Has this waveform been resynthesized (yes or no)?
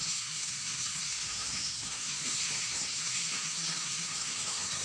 yes